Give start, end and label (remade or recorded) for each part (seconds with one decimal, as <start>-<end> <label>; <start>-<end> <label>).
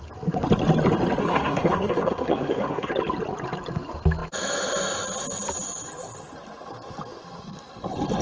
0.0-1.2 recorded; 1.2-2.9 remade; 2.9-8.2 recorded